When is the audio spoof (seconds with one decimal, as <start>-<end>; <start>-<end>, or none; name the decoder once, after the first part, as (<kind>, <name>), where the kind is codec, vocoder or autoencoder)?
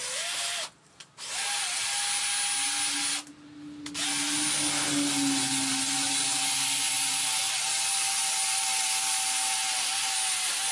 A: none